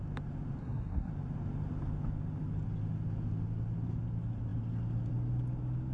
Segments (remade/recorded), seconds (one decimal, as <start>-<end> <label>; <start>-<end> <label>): 0.0-0.6 recorded; 0.6-1.1 remade; 1.1-5.9 recorded